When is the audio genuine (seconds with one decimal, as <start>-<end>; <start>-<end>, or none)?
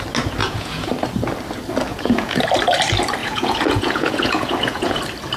0.0-0.4; 0.9-1.9; 2.4-3.2; 5.0-5.4